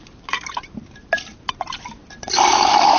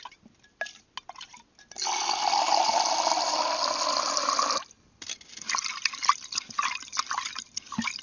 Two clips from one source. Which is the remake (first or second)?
first